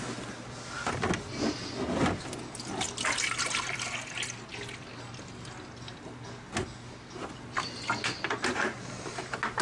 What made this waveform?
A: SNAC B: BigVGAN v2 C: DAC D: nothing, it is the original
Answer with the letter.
D